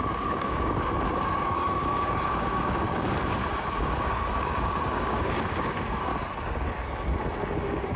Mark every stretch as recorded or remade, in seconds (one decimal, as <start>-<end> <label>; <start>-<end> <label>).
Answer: 0.0-6.1 remade; 6.1-7.6 recorded; 7.6-8.0 remade